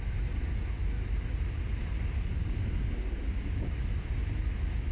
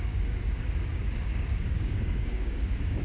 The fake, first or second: second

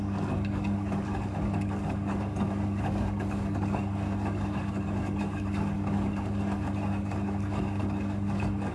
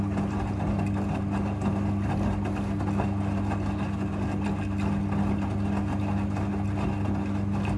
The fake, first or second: first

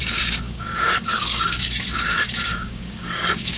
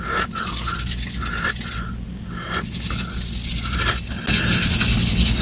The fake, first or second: first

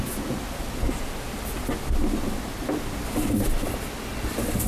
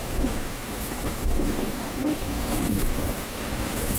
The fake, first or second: second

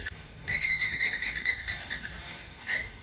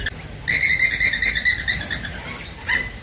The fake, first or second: first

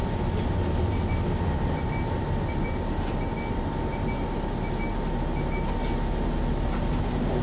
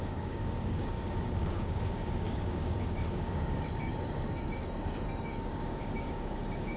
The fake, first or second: second